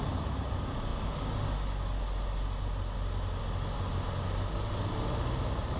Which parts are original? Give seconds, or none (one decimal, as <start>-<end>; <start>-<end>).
0.0-5.8